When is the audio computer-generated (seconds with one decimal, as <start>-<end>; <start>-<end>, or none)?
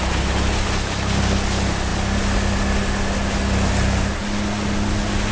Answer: none